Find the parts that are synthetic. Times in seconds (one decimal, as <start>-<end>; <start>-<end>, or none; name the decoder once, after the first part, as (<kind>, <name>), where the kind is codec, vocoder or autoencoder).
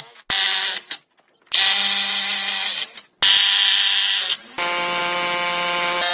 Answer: none